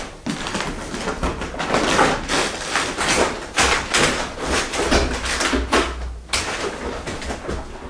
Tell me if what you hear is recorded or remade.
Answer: recorded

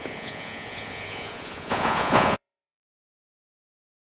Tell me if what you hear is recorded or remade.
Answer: remade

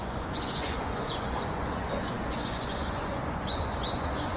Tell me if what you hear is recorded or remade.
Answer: remade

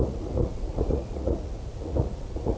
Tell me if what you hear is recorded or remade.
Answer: remade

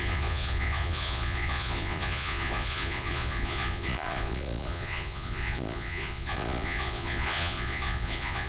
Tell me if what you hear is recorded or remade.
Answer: remade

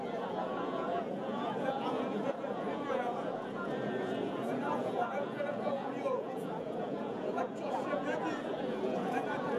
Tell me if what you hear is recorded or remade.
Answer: remade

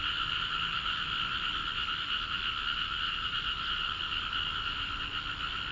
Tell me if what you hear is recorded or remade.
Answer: recorded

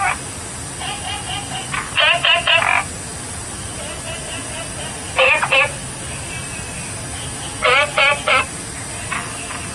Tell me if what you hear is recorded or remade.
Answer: recorded